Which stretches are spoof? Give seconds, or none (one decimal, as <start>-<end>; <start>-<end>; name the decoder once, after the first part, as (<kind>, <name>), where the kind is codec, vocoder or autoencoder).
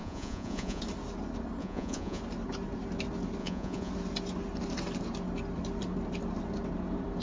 0.0-0.8 (vocoder, Vocos); 1.6-2.2; 3.4-3.9